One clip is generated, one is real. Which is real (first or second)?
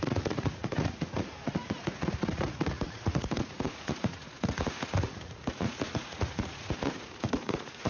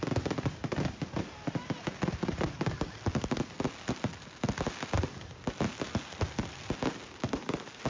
second